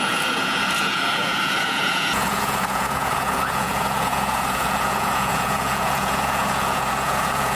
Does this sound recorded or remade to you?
remade